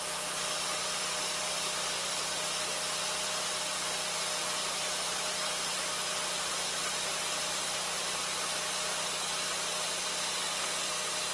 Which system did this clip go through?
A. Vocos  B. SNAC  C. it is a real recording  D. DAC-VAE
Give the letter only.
C